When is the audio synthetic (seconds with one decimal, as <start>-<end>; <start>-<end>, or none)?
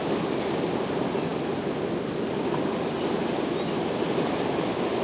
none